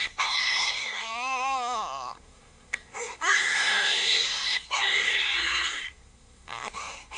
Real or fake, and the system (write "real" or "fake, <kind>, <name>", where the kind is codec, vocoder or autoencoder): fake, codec, SNAC